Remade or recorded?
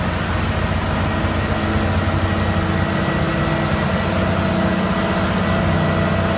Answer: recorded